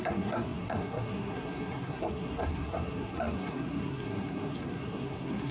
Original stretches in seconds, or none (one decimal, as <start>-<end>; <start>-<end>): none